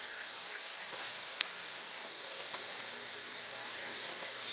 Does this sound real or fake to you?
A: fake